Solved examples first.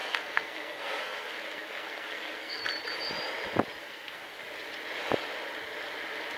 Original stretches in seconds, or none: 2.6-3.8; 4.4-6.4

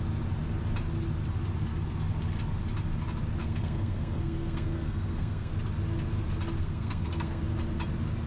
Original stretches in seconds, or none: 0.0-3.4; 5.5-6.6; 7.4-8.3

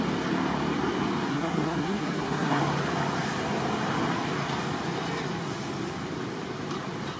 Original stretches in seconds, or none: 0.0-1.3; 2.6-7.2

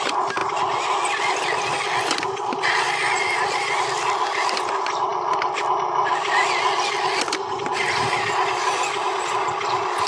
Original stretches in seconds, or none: 0.0-10.1

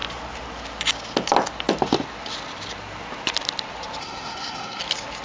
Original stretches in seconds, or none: 0.0-4.0; 4.8-5.2